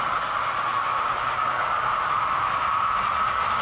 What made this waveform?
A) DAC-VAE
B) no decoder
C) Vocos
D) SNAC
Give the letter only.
B